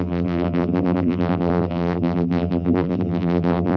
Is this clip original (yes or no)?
no